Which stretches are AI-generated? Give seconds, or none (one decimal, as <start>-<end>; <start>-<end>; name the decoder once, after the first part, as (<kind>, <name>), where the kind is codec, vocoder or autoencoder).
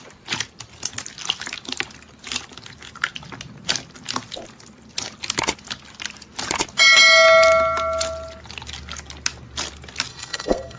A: 10.1-10.8 (codec, SNAC)